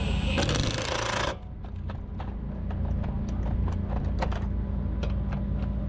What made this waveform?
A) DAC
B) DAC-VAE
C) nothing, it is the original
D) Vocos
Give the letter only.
C